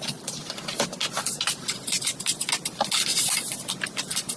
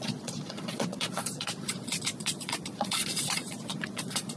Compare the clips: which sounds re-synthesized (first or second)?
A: second